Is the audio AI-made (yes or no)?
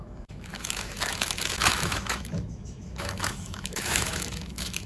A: yes